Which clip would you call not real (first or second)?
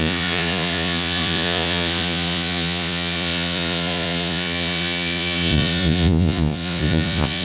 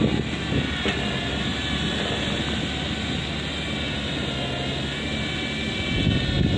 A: first